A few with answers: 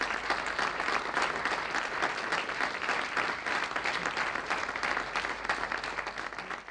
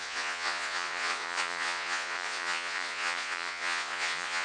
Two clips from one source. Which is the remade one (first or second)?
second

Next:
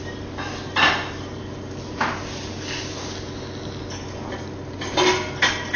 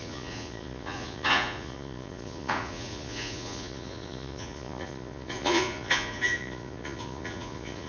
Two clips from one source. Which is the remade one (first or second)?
second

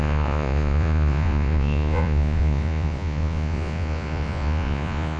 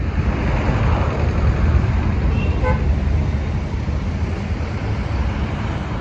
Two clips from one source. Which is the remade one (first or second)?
first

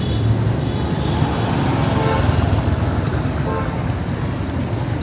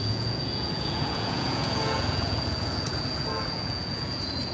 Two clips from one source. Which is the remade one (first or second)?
second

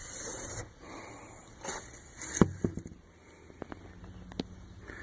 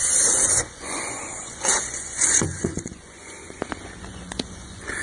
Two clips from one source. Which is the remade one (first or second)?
second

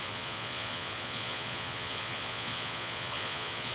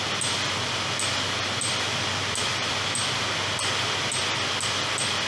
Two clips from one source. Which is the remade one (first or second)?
first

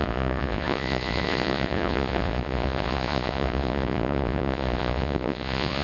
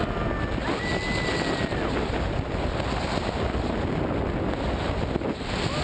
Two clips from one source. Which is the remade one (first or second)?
first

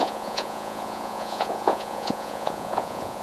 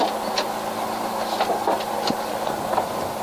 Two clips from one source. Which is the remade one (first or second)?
first